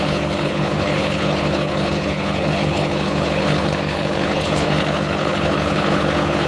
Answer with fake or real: fake